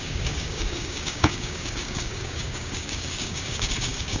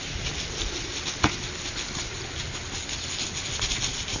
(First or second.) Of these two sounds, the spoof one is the first